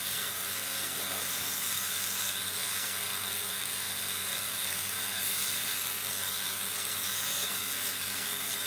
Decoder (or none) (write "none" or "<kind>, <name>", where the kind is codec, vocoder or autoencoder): codec, SNAC